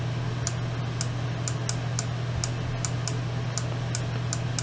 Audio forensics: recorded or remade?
recorded